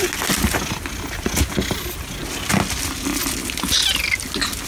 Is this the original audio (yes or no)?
yes